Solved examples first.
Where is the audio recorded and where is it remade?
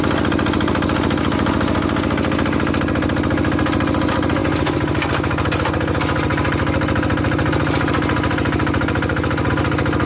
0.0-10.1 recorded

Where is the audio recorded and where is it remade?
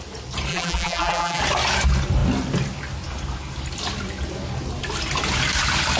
0.0-0.5 recorded; 0.5-1.4 remade; 1.4-6.0 recorded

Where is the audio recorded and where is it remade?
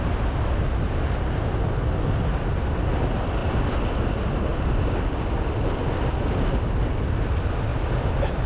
0.0-3.4 recorded; 3.4-4.0 remade; 4.0-4.5 recorded; 4.5-5.1 remade; 5.1-7.7 recorded; 7.7-8.5 remade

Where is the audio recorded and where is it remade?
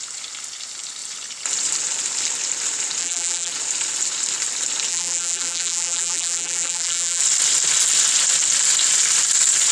0.0-3.0 recorded; 3.0-3.5 remade; 3.5-4.9 recorded; 4.9-7.2 remade; 7.2-9.7 recorded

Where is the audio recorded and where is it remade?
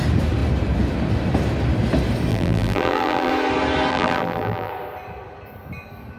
0.0-2.3 recorded; 2.3-3.3 remade; 3.3-3.9 recorded; 3.9-4.7 remade; 4.7-6.2 recorded